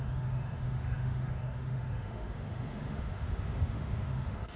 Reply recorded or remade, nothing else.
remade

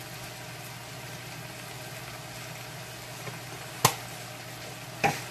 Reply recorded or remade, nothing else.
recorded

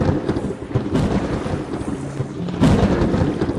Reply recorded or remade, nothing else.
recorded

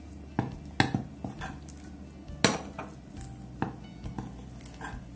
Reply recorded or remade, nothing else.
recorded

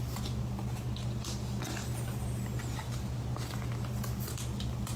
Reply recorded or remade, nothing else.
recorded